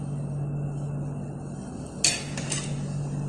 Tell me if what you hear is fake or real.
real